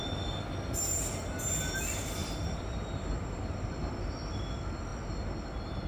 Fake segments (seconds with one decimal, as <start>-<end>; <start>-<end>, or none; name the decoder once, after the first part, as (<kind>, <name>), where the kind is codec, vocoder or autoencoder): 2.2-3.4 (vocoder, BigVGAN v2)